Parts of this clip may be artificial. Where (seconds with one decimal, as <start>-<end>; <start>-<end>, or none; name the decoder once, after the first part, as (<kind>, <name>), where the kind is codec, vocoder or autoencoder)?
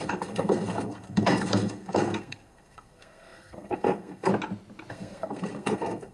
0.0-4.3 (codec, SNAC); 4.9-6.1